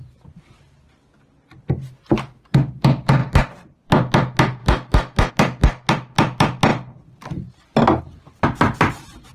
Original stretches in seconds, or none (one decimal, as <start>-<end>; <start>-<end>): 0.0-4.6; 5.3-9.3